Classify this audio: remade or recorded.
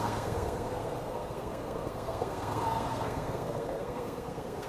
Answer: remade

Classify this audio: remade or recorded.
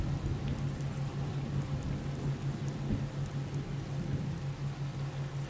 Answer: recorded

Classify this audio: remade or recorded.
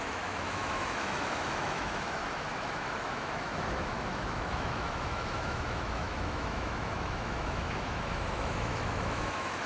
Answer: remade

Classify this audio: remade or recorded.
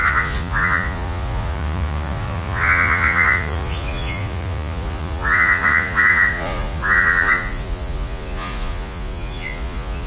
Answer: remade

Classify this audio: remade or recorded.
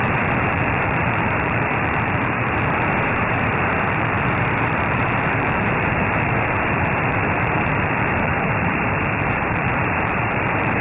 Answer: remade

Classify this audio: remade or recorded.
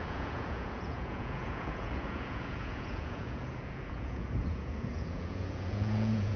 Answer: remade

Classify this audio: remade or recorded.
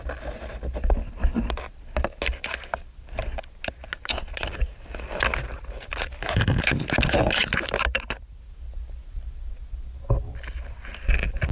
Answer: recorded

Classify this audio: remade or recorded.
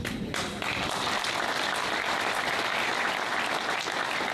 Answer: recorded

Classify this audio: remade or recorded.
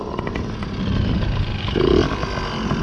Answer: recorded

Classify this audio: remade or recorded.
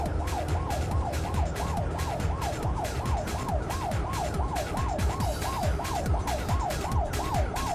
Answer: remade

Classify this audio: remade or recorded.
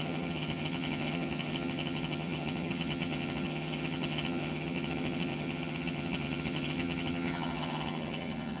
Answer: remade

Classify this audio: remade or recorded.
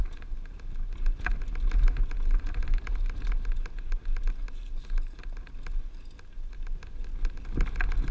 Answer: recorded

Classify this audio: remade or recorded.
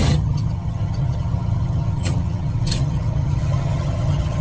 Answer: remade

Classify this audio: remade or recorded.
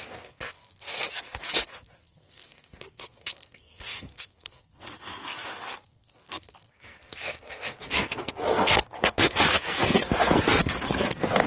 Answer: remade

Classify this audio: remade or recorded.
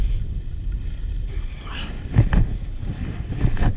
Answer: recorded